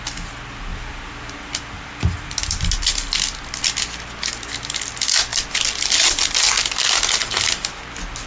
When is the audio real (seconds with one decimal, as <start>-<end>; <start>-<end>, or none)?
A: 0.0-0.7; 2.5-5.3; 6.5-8.3